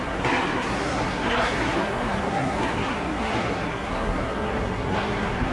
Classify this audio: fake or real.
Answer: fake